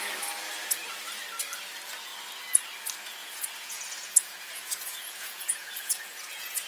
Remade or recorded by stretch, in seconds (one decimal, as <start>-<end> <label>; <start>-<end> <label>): 0.0-3.2 recorded; 3.2-6.7 remade